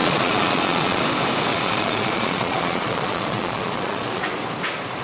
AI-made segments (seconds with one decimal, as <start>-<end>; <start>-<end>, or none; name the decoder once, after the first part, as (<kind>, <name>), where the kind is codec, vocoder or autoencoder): 0.0-1.0 (vocoder, Vocos); 1.5-4.2